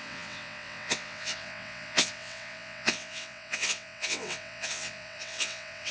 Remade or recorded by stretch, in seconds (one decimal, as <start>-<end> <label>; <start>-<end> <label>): 0.0-5.9 remade

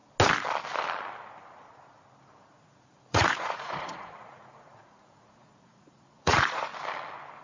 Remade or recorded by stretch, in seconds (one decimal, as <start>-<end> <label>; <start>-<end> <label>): 0.0-2.4 recorded; 2.4-6.7 remade; 6.7-7.4 recorded

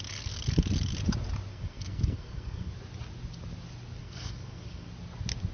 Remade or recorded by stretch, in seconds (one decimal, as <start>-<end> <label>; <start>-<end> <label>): 0.0-1.5 recorded; 1.5-2.7 remade; 2.7-4.0 recorded; 4.0-4.9 remade; 4.9-5.5 recorded

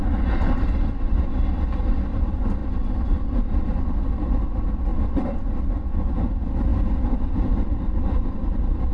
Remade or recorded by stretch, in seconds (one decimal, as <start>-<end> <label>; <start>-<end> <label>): 0.0-8.9 recorded

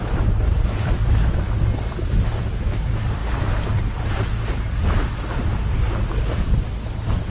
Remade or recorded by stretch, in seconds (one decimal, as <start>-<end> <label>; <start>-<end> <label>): 0.0-3.2 remade; 3.2-4.4 recorded; 4.4-5.5 remade; 5.5-6.2 recorded; 6.2-7.3 remade

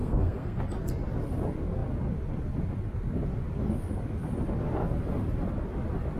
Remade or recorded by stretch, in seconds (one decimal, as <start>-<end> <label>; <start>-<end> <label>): 0.0-0.6 remade; 0.6-6.2 recorded

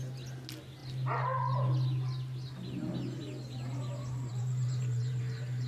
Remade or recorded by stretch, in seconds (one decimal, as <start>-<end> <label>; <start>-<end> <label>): 0.0-4.3 recorded; 4.3-5.2 remade; 5.2-5.7 recorded